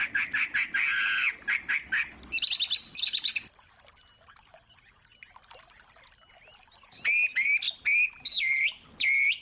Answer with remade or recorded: recorded